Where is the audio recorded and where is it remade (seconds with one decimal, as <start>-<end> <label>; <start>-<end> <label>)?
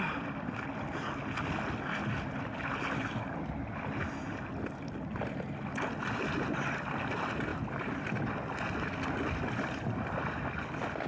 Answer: 0.0-11.1 recorded